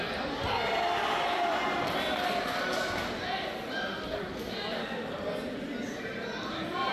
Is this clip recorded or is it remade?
recorded